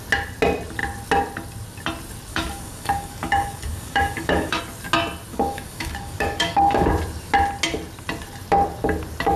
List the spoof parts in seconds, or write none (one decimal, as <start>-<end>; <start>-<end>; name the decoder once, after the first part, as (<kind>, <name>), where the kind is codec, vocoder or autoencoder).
2.3-4.6 (codec, DAC); 5.3-6.9